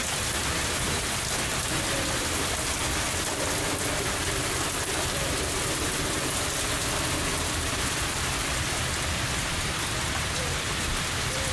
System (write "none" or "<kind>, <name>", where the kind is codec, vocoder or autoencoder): vocoder, BigVGAN v2